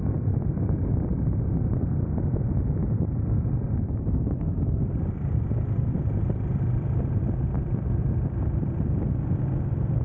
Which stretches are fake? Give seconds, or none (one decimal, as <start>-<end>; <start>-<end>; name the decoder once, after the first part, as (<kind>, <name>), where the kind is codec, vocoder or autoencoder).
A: 0.0-10.0 (vocoder, BigVGAN v2)

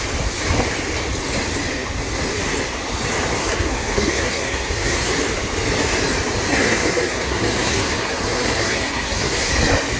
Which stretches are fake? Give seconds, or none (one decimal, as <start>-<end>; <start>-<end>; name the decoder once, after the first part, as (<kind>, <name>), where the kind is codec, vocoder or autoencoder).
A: 3.4-5.1 (codec, SNAC); 6.5-9.5

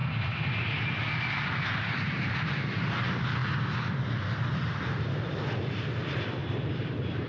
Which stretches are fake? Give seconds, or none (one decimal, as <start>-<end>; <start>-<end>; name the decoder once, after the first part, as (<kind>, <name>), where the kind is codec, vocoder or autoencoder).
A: none

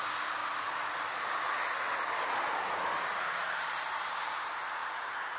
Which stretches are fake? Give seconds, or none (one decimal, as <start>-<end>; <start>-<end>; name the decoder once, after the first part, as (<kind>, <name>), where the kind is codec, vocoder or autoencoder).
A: none

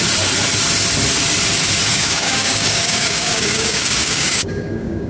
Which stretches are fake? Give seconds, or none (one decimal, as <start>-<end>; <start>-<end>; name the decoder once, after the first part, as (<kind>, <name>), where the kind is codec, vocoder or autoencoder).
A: 1.9-5.1 (codec, DAC)

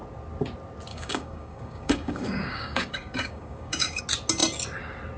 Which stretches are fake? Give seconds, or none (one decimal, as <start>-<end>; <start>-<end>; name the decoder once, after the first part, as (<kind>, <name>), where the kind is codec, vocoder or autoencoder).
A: 0.9-4.0 (codec, DAC)